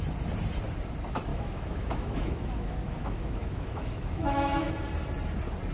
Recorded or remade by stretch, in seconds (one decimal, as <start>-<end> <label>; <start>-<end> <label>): 0.0-1.3 recorded; 1.3-4.7 remade; 4.7-5.7 recorded